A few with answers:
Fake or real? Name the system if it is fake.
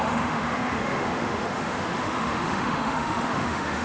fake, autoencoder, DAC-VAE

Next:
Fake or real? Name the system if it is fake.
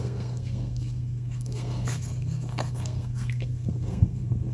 fake, codec, SNAC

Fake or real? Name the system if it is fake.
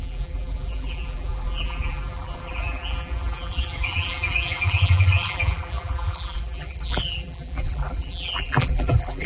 fake, vocoder, BigVGAN v2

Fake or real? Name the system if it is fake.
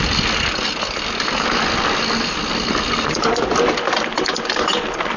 real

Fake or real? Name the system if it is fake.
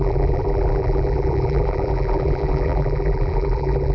fake, vocoder, BigVGAN v2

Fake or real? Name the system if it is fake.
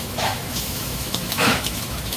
fake, autoencoder, DAC-VAE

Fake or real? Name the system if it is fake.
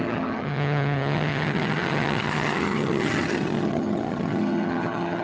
fake, vocoder, HiFi-GAN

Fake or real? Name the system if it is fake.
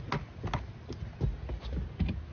real